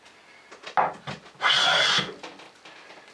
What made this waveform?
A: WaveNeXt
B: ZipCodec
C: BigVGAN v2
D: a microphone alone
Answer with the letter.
D